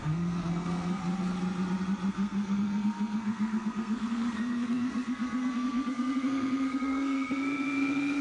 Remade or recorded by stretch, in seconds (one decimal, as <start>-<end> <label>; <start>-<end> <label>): 0.0-1.0 remade; 1.0-2.1 recorded; 2.1-8.2 remade